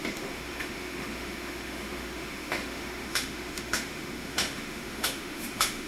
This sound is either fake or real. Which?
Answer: fake